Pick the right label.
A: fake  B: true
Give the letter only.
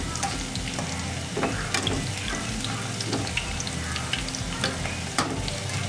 B